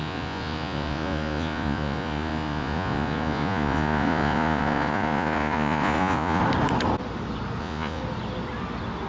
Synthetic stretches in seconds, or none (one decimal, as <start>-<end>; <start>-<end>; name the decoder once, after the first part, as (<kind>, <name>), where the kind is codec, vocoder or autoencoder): 0.0-6.4 (vocoder, Vocos); 7.6-8.0